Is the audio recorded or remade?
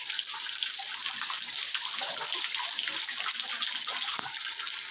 recorded